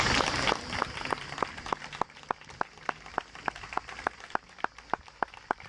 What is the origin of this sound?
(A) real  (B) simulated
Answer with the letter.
A